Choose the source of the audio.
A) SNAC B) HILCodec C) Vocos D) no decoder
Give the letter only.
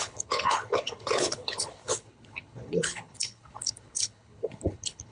B